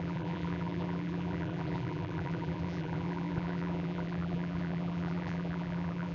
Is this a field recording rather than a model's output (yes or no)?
no